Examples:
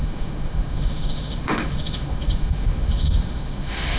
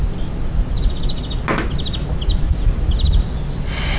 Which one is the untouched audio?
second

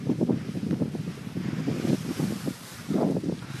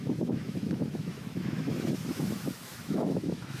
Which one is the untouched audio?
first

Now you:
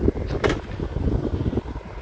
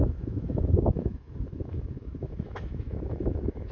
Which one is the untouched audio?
first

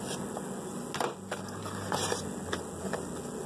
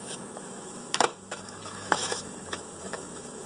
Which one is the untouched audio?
first